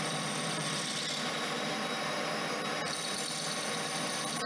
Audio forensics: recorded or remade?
recorded